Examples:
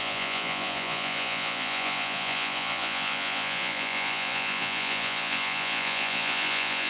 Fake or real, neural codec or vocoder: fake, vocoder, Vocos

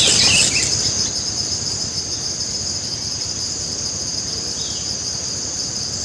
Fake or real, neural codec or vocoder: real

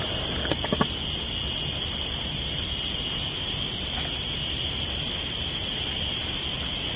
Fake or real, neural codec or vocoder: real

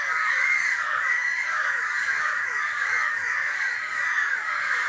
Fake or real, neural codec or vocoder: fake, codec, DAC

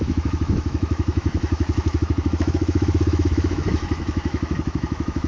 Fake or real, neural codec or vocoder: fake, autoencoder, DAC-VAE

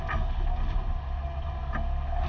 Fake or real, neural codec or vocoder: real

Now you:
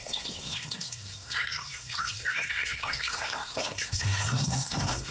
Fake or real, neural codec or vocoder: fake, codec, SNAC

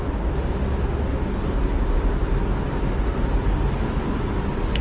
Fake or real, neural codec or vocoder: real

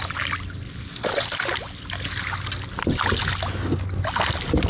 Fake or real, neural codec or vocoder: real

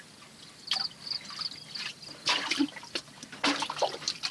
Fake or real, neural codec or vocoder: real